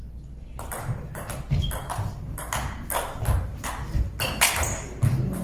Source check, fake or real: real